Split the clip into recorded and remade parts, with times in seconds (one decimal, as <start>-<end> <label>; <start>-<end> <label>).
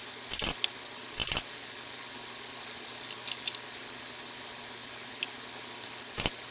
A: 0.0-1.2 recorded; 1.2-5.1 remade; 5.1-6.5 recorded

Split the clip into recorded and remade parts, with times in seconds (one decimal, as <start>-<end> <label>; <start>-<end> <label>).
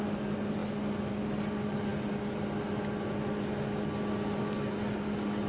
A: 0.0-5.5 recorded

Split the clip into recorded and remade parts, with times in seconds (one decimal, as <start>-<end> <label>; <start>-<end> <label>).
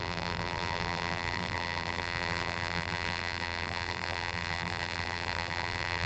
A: 0.0-6.1 remade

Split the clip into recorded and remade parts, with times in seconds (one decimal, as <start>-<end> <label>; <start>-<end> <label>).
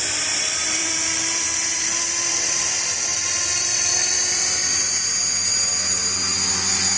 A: 0.0-5.7 remade; 5.7-7.0 recorded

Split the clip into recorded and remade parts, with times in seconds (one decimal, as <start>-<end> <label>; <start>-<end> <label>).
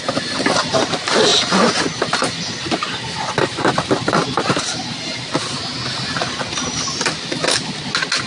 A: 0.0-8.3 recorded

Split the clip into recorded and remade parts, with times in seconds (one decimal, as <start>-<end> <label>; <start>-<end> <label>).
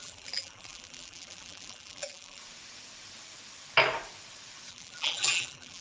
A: 0.0-2.4 remade; 2.4-4.7 recorded; 4.7-5.8 remade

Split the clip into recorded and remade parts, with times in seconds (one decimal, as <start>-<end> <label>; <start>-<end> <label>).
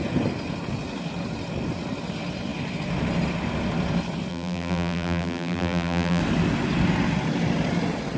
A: 0.0-4.3 recorded; 4.3-6.2 remade; 6.2-8.2 recorded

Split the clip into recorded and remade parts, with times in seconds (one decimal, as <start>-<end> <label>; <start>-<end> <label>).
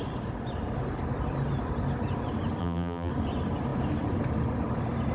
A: 0.0-2.6 recorded; 2.6-3.1 remade; 3.1-5.1 recorded